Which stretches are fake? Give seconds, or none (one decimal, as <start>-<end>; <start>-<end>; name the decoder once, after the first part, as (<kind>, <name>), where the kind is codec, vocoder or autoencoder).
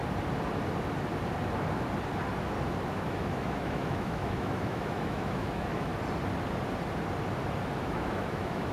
2.9-5.9 (autoencoder, DAC-VAE); 7.8-8.7